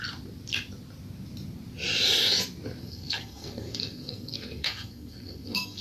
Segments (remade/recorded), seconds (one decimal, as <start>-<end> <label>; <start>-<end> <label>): 0.0-2.8 recorded; 2.8-5.8 remade